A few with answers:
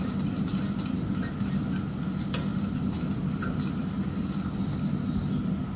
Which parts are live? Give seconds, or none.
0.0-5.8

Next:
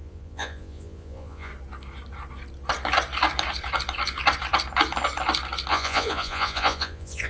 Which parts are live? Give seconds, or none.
1.5-5.7

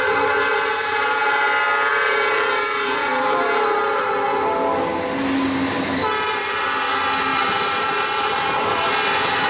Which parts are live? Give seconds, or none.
0.0-0.7; 1.4-1.9; 4.1-6.0; 6.8-7.3; 8.9-9.5

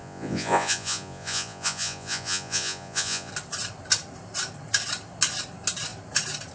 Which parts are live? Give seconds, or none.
3.3-6.5

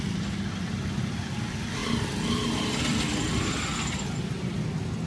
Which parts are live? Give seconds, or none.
0.0-5.1